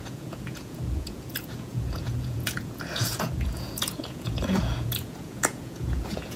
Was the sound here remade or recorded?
remade